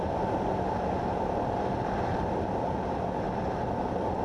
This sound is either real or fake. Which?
real